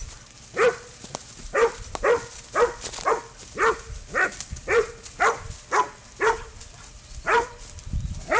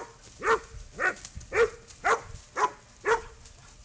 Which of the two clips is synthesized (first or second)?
first